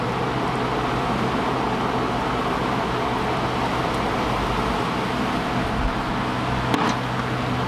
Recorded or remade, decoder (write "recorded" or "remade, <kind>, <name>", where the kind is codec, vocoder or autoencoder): recorded